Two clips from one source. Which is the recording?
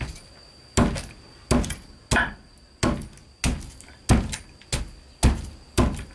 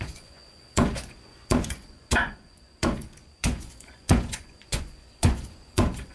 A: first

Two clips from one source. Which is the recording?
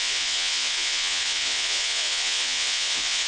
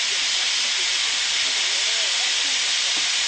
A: second